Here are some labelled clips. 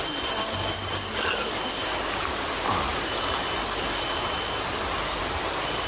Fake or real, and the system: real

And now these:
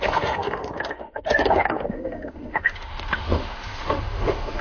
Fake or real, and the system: fake, autoencoder, DAC-VAE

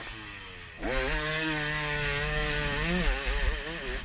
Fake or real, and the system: real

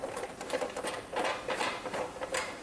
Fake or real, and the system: fake, vocoder, BigVGAN v2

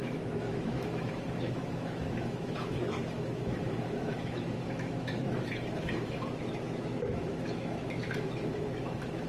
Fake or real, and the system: fake, autoencoder, DAC-VAE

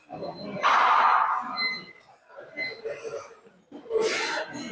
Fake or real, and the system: real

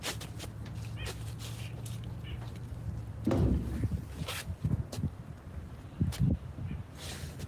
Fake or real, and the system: real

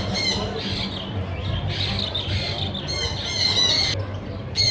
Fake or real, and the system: real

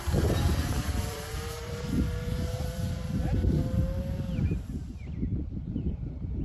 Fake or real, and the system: fake, vocoder, BigVGAN v2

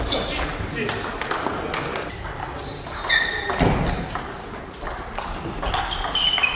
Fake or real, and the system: real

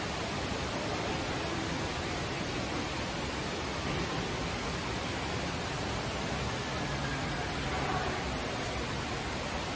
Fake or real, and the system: fake, vocoder, BigVGAN v2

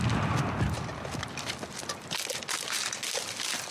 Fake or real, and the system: real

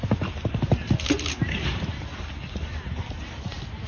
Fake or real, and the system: real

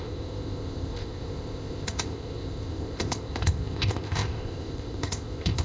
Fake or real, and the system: fake, codec, ZipCodec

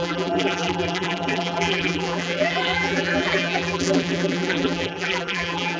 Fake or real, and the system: fake, vocoder, BigVGAN v2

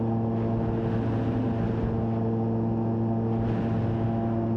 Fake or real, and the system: real